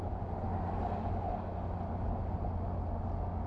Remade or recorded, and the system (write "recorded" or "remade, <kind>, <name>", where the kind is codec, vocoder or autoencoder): recorded